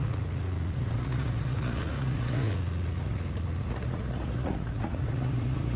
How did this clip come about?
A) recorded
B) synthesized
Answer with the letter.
B